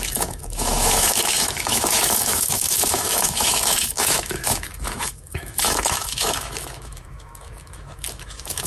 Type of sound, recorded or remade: remade